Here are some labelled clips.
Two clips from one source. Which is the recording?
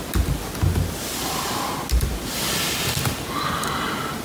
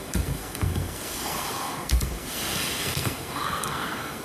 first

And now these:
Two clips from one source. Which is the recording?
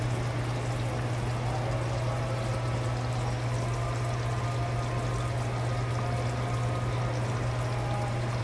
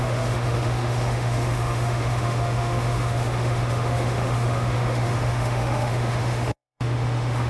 first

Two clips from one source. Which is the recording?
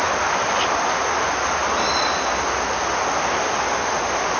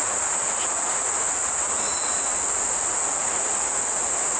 first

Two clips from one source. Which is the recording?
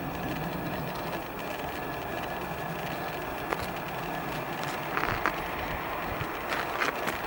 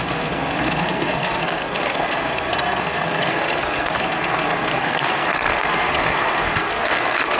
first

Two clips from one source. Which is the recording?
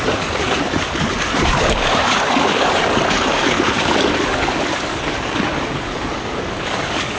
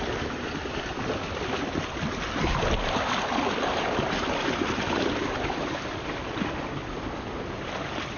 second